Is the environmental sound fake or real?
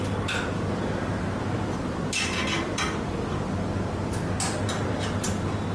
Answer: real